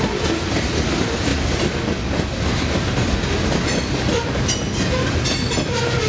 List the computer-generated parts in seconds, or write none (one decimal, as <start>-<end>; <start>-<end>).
none